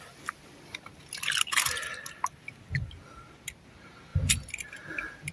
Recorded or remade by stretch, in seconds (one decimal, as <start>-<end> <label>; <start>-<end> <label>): 0.0-5.3 recorded